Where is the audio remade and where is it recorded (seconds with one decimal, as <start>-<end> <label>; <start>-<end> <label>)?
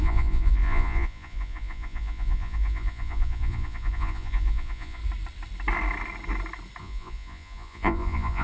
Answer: 0.0-5.0 remade; 5.0-6.8 recorded; 6.8-8.4 remade